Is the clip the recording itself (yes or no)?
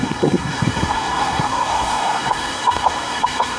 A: no